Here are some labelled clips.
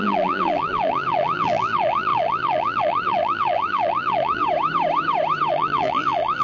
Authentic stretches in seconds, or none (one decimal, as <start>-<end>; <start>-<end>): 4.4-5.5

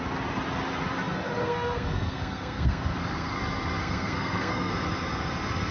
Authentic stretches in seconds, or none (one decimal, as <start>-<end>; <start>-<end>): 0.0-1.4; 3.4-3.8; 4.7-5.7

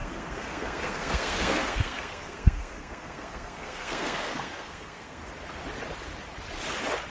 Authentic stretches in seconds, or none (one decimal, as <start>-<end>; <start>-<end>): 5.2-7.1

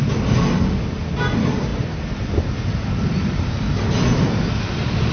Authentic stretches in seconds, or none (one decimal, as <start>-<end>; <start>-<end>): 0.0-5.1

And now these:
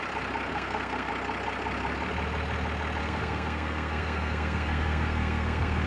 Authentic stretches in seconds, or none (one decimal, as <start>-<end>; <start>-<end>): 0.0-0.5; 1.1-3.0

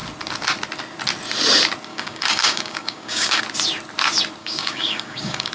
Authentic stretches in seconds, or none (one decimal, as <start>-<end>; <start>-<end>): 0.0-1.9; 3.4-4.4